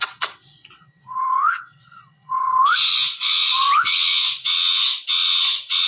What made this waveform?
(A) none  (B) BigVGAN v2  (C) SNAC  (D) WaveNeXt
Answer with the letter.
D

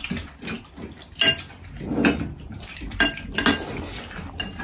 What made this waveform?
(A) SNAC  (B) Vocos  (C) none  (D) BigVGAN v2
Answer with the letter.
C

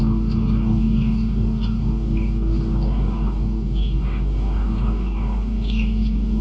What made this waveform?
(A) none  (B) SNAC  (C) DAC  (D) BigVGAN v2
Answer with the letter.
C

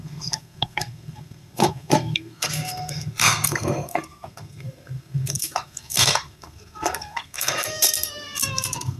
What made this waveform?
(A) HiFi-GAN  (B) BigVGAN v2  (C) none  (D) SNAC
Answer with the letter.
D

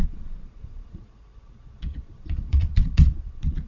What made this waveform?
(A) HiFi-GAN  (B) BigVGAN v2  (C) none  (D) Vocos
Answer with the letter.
D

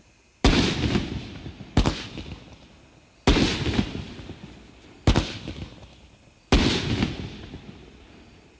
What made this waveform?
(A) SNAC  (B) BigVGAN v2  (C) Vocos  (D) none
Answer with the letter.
D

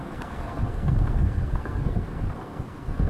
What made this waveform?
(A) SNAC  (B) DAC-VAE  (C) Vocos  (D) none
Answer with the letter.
A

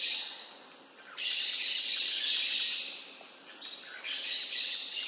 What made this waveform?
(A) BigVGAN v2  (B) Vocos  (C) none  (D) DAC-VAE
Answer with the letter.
C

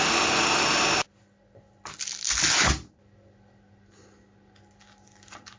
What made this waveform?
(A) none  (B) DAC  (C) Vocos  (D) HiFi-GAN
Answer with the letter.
A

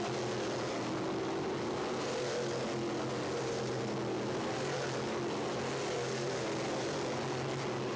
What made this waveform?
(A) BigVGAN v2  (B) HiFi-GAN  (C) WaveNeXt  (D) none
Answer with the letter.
D